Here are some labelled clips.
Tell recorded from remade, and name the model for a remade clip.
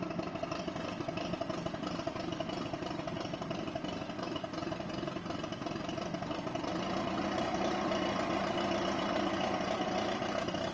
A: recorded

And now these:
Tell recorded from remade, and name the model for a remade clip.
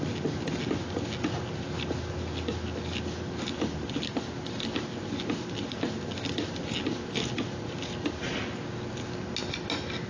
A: recorded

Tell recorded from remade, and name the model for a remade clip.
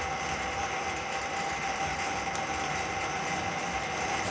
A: recorded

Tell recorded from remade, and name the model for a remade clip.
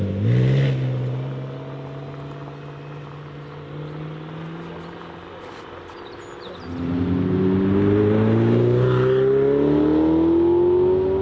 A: recorded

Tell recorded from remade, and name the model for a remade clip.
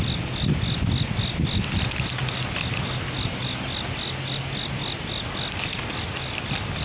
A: recorded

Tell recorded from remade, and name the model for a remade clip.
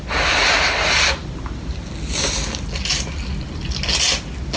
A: recorded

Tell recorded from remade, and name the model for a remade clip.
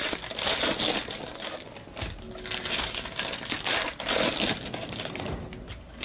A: recorded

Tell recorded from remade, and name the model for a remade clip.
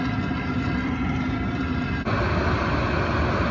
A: recorded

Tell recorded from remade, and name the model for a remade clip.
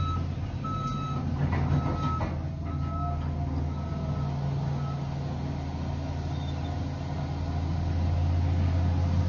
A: recorded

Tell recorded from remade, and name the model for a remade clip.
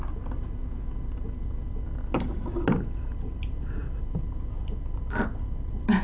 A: recorded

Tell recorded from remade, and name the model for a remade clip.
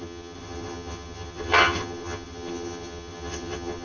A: remade, vocoder, HiFi-GAN